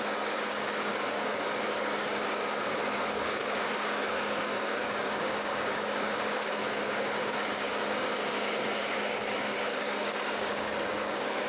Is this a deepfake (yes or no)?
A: yes